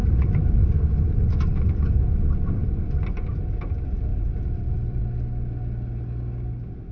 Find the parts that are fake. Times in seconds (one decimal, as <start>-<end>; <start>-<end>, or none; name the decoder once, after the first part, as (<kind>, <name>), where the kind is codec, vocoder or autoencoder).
0.0-0.6 (vocoder, BigVGAN v2); 4.1-5.0